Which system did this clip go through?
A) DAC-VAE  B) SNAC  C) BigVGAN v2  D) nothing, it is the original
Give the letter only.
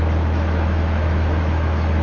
A